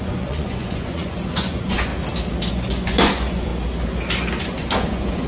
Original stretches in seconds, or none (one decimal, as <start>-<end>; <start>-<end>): 1.9-2.5; 3.5-4.4